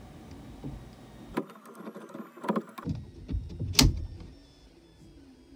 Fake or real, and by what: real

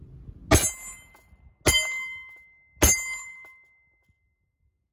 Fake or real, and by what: real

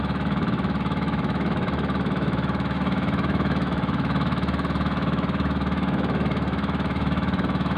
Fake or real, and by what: fake, autoencoder, DAC-VAE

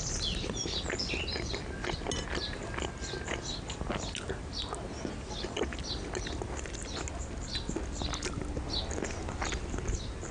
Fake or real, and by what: real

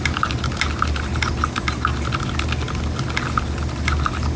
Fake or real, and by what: real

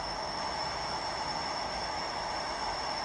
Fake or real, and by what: fake, autoencoder, DAC-VAE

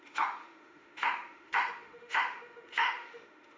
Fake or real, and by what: fake, autoencoder, DAC-VAE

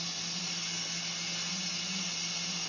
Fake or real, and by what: real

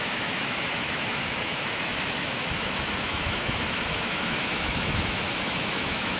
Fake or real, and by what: fake, autoencoder, DAC-VAE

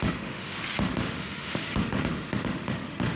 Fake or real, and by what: fake, autoencoder, DAC-VAE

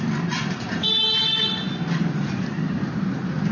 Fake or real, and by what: real